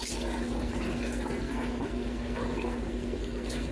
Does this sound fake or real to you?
fake